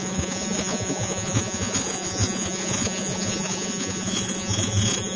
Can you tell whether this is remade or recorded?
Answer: remade